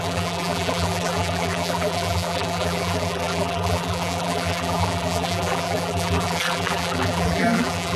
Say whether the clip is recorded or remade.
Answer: remade